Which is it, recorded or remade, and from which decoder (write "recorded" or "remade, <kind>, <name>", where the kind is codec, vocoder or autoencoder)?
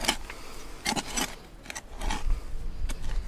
recorded